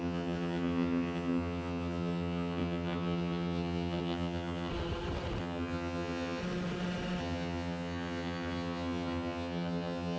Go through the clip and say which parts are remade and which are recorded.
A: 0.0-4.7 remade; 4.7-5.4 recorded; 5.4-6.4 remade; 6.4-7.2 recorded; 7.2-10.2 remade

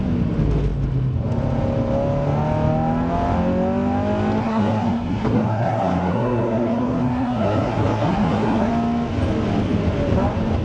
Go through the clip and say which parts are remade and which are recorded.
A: 0.0-4.4 recorded; 4.4-8.7 remade; 8.7-10.6 recorded

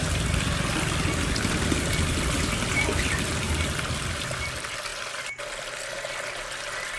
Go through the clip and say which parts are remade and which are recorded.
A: 0.0-7.0 recorded